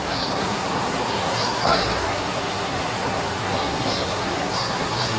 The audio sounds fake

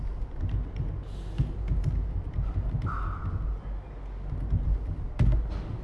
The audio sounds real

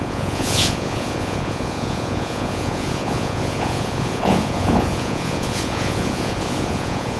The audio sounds fake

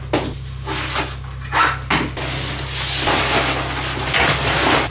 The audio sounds real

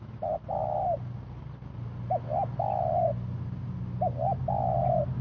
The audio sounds real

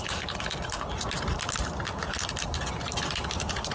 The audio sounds real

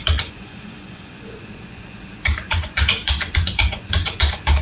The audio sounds fake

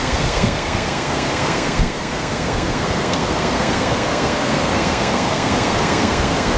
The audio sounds fake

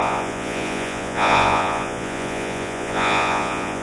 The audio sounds fake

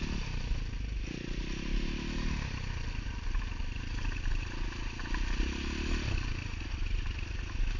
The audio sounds real